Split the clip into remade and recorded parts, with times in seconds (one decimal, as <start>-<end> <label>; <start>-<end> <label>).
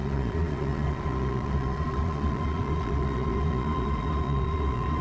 0.0-5.0 remade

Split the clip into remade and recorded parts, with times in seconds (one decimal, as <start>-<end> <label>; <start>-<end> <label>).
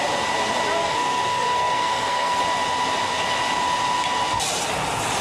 0.0-0.8 recorded; 0.8-2.4 remade; 2.4-5.2 recorded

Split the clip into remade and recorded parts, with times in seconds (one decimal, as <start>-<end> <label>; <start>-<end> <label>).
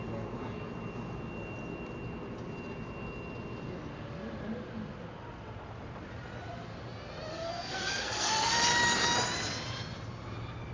0.0-7.3 recorded; 7.3-8.5 remade; 8.5-10.7 recorded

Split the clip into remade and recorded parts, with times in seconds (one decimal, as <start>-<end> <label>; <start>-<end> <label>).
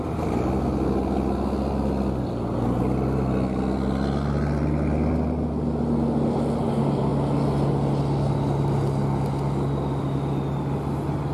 0.0-11.3 recorded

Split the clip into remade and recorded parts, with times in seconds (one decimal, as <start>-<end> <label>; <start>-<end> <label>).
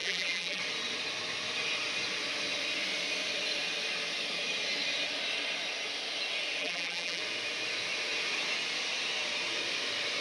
0.0-0.6 remade; 0.6-6.6 recorded; 6.6-7.2 remade; 7.2-10.2 recorded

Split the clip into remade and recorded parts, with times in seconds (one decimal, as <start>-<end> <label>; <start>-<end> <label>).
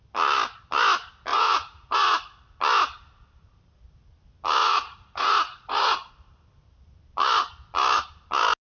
0.0-1.3 recorded; 1.3-2.4 remade; 2.4-4.6 recorded; 4.6-6.1 remade; 6.1-8.8 recorded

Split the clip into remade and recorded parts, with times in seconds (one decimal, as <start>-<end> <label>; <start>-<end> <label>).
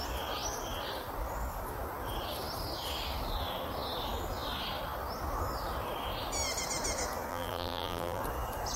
0.0-7.3 recorded; 7.3-8.2 remade; 8.2-8.8 recorded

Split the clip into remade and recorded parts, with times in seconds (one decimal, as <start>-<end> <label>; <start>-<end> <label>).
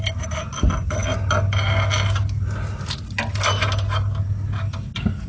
0.0-5.3 recorded